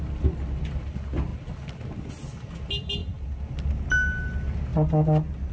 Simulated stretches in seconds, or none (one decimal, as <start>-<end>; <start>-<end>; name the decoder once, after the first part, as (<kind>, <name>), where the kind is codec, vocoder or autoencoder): none